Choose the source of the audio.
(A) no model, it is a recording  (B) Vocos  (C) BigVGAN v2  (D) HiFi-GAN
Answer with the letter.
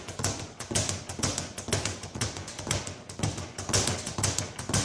B